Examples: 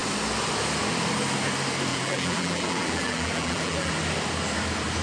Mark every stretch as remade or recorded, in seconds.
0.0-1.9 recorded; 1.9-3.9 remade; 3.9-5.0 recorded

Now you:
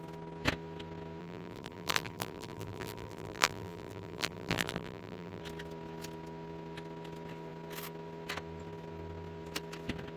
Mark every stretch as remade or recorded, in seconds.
0.0-1.2 recorded; 1.2-5.4 remade; 5.4-10.2 recorded

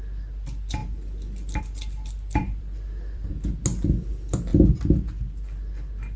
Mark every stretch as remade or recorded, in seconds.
0.0-2.4 recorded; 2.4-3.3 remade; 3.3-6.2 recorded

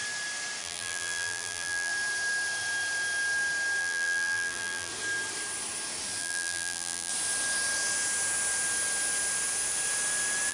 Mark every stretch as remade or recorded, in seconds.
0.0-0.6 recorded; 0.6-1.9 remade; 1.9-3.8 recorded; 3.8-4.9 remade; 4.9-6.2 recorded; 6.2-7.1 remade; 7.1-10.5 recorded

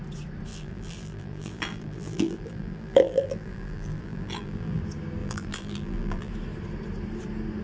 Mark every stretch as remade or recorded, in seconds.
0.0-0.5 recorded; 0.5-4.8 remade; 4.8-5.2 recorded; 5.2-6.3 remade; 6.3-7.6 recorded

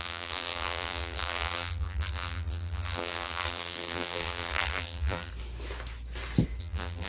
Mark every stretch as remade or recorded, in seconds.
0.0-5.3 remade; 5.3-6.6 recorded; 6.6-7.1 remade